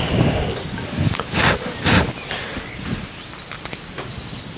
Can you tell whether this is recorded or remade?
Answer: recorded